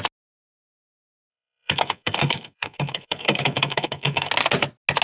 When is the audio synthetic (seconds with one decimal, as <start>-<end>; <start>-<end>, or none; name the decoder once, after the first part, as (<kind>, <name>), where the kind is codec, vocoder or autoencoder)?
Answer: 1.3-4.3 (codec, SNAC)